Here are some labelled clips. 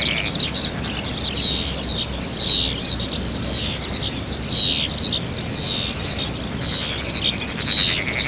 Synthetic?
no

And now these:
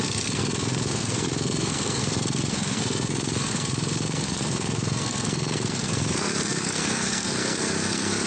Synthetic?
yes